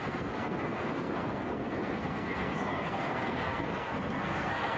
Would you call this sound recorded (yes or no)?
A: no